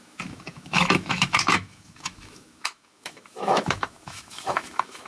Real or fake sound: fake